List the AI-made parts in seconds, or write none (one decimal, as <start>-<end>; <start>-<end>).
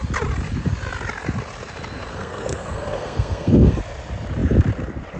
2.1-3.8